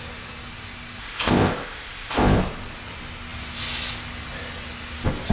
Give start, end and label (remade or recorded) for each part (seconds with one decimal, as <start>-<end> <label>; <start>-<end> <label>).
0.0-1.0 recorded; 1.0-2.4 remade; 2.4-5.3 recorded